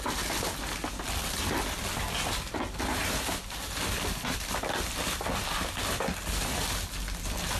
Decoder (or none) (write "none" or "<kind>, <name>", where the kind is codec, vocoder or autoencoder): none